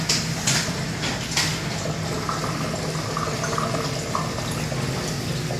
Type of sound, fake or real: real